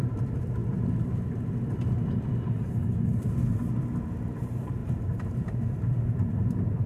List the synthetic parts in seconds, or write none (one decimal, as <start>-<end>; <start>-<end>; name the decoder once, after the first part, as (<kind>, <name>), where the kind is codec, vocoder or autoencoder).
0.0-0.6 (vocoder, BigVGAN v2); 4.3-6.9